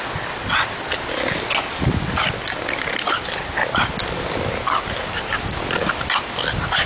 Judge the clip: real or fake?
real